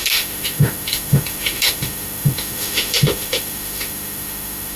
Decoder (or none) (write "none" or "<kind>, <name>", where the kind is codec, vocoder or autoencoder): autoencoder, DAC-VAE